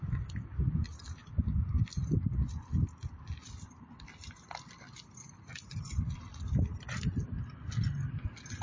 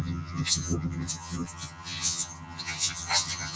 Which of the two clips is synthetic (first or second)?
second